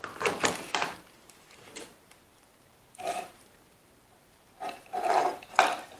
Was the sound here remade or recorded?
remade